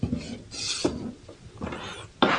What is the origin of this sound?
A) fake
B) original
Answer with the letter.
B